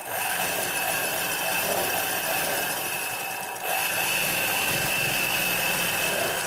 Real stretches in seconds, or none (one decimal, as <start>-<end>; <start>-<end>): 0.0-6.5